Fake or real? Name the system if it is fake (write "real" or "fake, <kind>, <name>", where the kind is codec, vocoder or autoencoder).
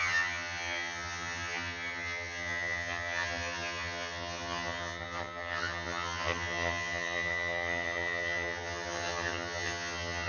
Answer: fake, vocoder, HiFi-GAN